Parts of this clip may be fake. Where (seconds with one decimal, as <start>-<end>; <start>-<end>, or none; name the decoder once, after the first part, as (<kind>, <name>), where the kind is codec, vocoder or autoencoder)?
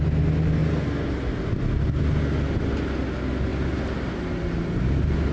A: none